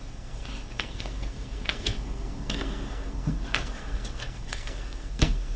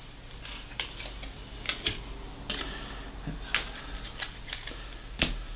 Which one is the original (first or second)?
second